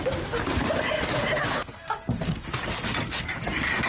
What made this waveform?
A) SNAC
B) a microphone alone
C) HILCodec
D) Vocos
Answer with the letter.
B